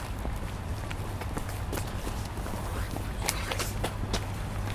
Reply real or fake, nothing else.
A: real